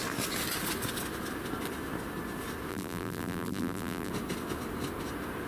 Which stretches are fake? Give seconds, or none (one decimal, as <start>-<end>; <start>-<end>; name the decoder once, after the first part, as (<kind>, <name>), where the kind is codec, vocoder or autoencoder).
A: 2.7-4.1 (vocoder, BigVGAN v2)